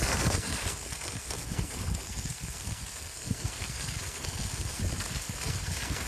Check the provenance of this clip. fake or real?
fake